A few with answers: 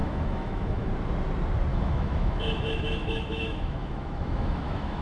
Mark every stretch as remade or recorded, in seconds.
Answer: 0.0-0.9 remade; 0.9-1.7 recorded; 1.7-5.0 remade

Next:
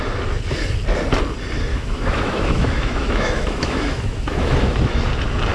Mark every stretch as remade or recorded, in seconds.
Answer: 0.0-1.7 recorded; 1.7-5.0 remade; 5.0-5.5 recorded

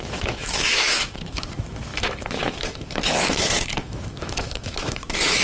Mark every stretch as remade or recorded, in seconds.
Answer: 0.0-5.4 remade

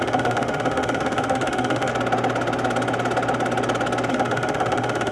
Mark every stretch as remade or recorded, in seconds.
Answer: 0.0-1.9 remade; 1.9-4.1 recorded; 4.1-5.1 remade

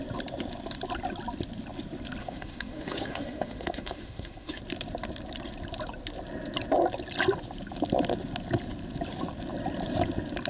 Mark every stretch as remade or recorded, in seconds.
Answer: 0.0-2.2 recorded; 2.2-4.6 remade; 4.6-10.5 recorded

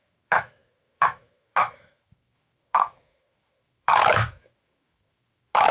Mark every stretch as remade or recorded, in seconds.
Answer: 0.0-5.7 remade

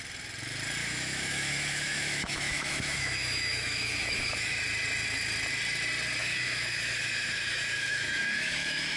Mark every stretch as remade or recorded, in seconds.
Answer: 0.0-0.8 recorded; 0.8-4.6 remade; 4.6-6.2 recorded; 6.2-9.0 remade